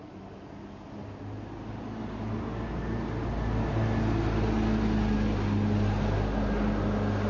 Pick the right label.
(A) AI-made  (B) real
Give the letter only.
B